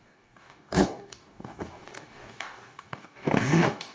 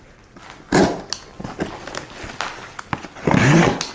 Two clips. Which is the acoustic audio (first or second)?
second